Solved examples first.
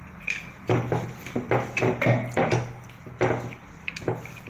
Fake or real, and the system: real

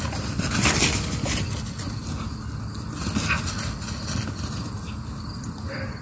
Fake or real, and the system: real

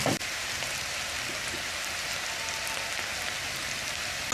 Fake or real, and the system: real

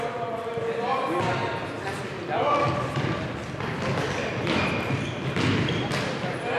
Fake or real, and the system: real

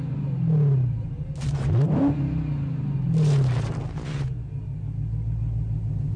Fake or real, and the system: real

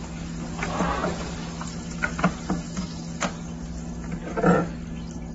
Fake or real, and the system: real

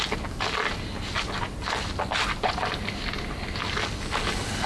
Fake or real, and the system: real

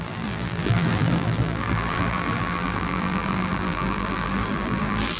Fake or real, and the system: fake, vocoder, BigVGAN v2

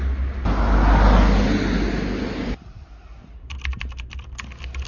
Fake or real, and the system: real